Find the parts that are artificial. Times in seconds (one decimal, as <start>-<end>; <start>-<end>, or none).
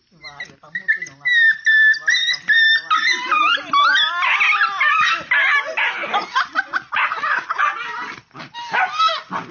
none